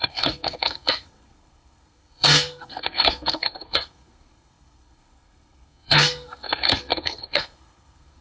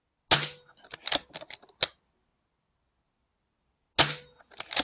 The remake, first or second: first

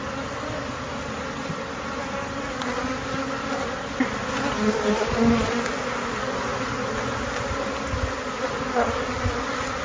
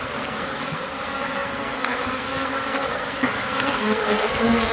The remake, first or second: second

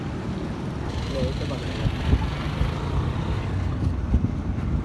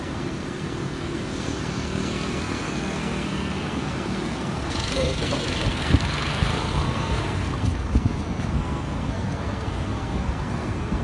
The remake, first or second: second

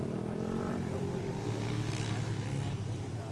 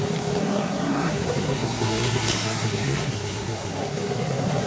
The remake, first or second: second